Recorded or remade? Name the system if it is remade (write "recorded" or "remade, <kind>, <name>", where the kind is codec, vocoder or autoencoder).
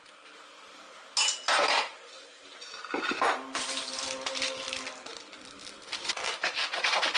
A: recorded